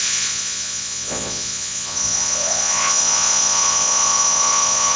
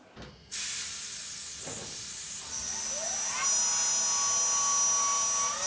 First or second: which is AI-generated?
first